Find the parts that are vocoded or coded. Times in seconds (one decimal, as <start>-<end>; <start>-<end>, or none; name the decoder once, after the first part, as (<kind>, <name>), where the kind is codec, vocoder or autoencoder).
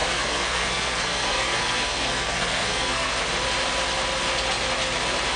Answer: 0.0-3.2 (codec, SNAC)